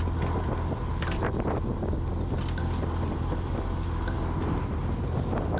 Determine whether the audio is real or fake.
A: real